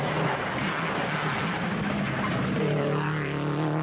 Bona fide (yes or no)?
yes